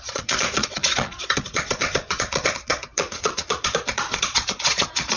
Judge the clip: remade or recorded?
remade